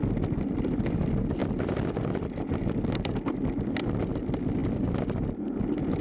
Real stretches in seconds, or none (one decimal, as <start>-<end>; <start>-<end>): 0.0-6.0